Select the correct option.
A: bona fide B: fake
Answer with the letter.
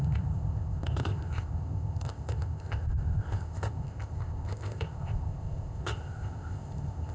B